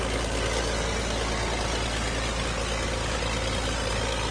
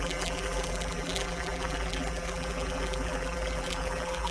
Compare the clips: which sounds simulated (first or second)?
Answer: second